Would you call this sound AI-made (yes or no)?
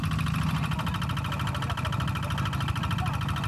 no